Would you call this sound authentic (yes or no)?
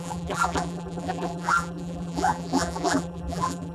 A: no